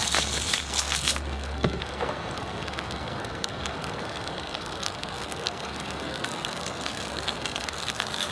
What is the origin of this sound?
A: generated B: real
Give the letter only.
A